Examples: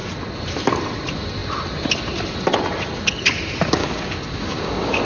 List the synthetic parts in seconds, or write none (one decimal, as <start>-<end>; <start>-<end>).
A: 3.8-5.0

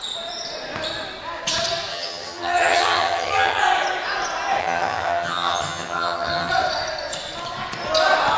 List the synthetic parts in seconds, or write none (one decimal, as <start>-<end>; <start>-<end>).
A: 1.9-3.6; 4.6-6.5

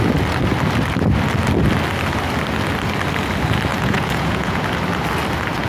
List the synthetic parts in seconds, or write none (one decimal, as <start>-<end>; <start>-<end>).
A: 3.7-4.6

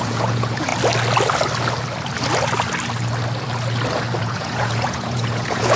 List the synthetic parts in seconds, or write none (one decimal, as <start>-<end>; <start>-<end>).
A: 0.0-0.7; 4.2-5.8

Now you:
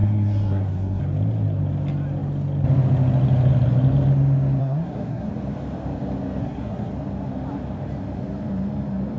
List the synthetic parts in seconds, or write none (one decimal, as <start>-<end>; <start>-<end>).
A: 0.0-1.0; 4.6-5.3; 6.4-6.9

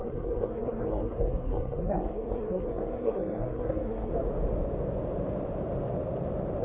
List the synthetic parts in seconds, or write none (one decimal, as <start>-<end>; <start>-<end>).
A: 0.0-4.1

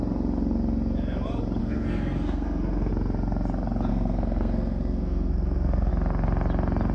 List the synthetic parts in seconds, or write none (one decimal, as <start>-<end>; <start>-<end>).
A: 1.6-2.9; 3.9-5.9

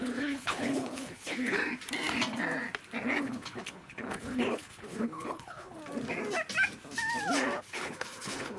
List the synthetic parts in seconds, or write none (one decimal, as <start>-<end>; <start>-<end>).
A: 0.0-1.6; 3.2-5.8; 7.6-8.6